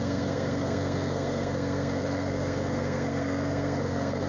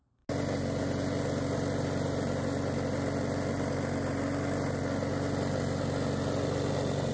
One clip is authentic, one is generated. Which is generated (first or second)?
first